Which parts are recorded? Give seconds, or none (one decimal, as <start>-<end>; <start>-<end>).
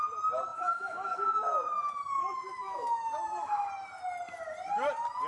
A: 0.0-0.5; 3.7-5.3